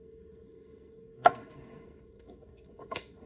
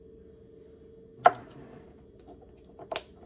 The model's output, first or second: first